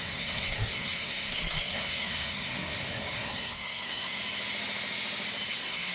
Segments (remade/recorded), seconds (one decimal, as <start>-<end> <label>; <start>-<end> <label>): 0.0-4.2 remade; 4.2-5.5 recorded; 5.5-5.9 remade